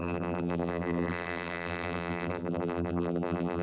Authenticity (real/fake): fake